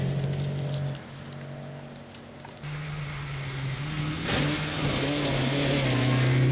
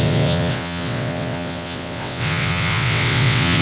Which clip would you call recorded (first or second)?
first